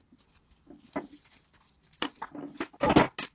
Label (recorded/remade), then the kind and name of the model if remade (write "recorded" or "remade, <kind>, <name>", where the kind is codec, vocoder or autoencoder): recorded